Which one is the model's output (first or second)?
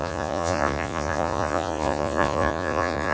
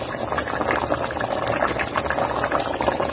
first